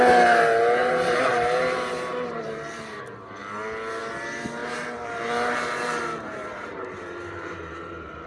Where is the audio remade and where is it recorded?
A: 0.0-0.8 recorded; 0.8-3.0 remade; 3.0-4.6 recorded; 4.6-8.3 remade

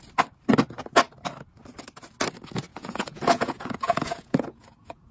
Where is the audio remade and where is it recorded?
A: 0.0-2.7 recorded; 2.7-5.1 remade

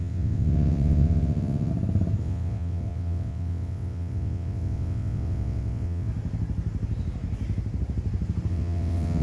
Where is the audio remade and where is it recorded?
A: 0.0-1.7 remade; 1.7-2.2 recorded; 2.2-6.1 remade; 6.1-8.5 recorded; 8.5-9.2 remade